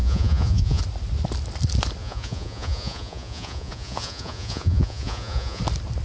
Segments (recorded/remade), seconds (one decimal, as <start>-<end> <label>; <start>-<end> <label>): 0.0-0.8 remade; 0.8-2.0 recorded; 2.0-5.6 remade; 5.6-6.0 recorded